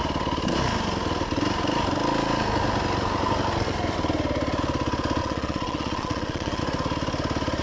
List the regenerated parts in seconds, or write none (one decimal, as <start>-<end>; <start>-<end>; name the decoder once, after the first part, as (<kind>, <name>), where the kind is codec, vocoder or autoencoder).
5.2-6.6 (vocoder, Vocos)